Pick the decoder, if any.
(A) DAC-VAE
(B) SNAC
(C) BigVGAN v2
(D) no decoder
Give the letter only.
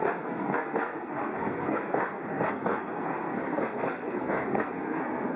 B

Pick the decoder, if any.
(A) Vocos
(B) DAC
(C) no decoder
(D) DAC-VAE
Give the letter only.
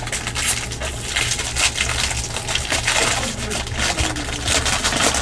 C